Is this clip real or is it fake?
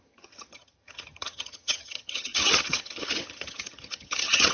fake